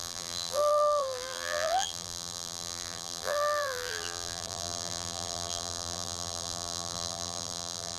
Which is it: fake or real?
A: fake